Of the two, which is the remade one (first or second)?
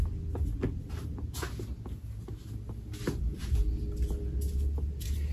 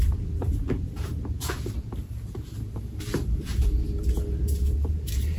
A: second